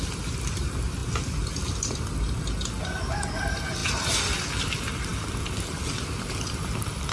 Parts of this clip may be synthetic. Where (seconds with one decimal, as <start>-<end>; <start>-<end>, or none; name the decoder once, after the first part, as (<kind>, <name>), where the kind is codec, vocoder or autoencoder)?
none